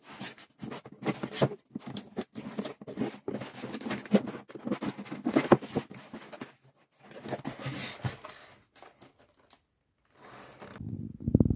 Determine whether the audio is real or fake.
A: real